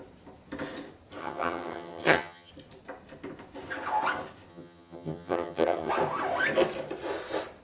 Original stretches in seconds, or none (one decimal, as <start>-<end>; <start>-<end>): 0.0-1.2; 2.5-4.5; 5.9-7.6